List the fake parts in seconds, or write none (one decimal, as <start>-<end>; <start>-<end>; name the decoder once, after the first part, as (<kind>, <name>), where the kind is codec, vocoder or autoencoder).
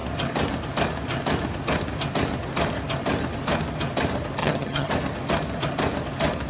4.4-4.9 (vocoder, HiFi-GAN)